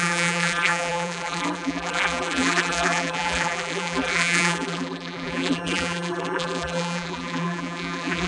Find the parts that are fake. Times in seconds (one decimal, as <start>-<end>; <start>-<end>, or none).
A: 0.0-8.3